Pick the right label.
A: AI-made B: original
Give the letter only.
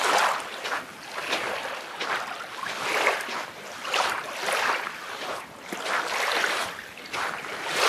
B